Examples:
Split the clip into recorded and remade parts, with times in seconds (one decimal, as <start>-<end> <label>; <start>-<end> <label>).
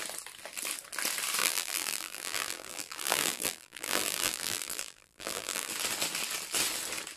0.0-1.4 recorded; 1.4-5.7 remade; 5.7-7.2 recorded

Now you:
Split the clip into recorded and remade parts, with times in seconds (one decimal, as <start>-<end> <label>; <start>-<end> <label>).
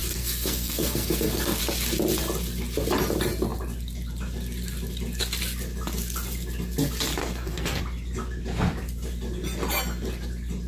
0.0-1.6 remade; 1.6-7.2 recorded; 7.2-7.8 remade; 7.8-10.7 recorded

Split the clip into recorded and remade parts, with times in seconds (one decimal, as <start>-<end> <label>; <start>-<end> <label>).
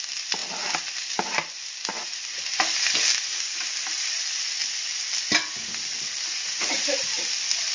0.0-7.7 recorded